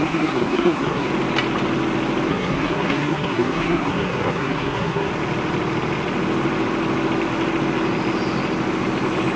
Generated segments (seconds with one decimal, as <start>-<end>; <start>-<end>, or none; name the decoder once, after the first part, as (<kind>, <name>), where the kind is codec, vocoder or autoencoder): 0.0-1.1 (codec, SNAC); 2.3-5.1